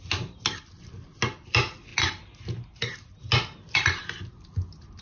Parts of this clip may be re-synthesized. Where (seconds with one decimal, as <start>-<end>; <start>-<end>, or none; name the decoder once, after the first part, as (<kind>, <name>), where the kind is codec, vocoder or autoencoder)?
none